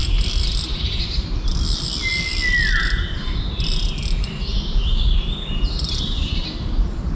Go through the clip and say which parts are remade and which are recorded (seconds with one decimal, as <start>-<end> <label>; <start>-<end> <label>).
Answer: 0.0-7.2 recorded